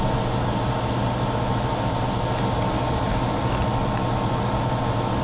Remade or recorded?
recorded